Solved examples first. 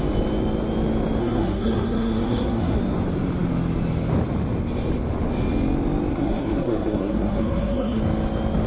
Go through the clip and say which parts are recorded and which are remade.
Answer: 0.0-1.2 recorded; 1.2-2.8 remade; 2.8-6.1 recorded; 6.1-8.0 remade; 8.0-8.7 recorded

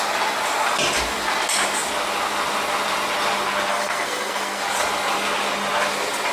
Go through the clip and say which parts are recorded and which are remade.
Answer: 0.0-3.7 recorded; 3.7-4.6 remade; 4.6-6.3 recorded